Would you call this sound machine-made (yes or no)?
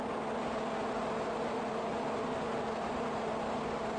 no